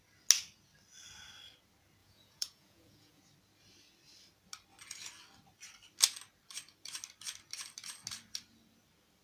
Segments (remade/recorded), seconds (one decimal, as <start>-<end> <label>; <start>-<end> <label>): 0.0-2.0 recorded; 2.0-3.2 remade; 3.2-9.2 recorded